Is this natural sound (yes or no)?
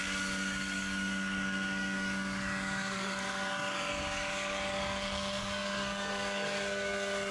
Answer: no